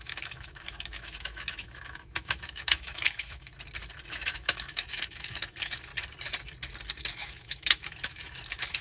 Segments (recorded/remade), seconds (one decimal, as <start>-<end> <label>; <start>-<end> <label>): 0.0-3.5 remade; 3.5-4.1 recorded; 4.1-5.9 remade; 5.9-7.1 recorded; 7.1-8.8 remade